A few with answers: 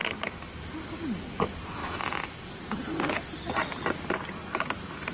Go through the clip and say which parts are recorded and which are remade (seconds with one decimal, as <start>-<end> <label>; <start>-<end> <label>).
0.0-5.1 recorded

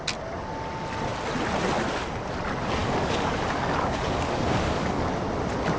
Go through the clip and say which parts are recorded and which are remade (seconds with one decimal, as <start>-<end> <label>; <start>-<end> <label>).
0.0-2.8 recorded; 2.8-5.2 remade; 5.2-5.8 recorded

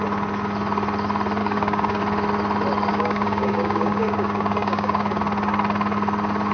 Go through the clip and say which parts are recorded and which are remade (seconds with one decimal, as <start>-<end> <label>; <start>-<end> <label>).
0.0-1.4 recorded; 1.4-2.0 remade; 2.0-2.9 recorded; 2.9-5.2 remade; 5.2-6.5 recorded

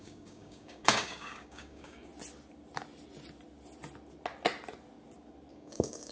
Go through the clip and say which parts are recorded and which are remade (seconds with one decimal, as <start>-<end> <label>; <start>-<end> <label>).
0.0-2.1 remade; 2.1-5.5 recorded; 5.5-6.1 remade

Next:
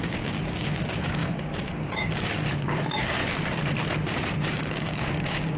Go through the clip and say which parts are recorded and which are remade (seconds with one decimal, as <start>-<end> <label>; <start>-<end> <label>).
0.0-3.2 remade; 3.2-4.5 recorded; 4.5-5.6 remade

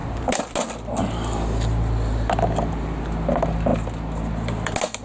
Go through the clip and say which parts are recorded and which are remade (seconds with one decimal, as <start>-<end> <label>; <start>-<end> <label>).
0.0-5.0 recorded

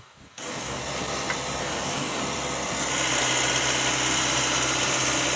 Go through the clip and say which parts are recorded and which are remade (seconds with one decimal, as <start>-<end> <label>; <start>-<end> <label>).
0.0-0.8 remade; 0.8-1.6 recorded; 1.6-2.2 remade; 2.2-5.4 recorded

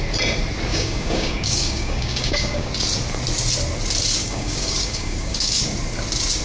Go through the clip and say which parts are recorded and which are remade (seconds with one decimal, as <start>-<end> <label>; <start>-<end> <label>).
0.0-0.7 recorded; 0.7-2.7 remade; 2.7-4.2 recorded; 4.2-5.6 remade; 5.6-6.4 recorded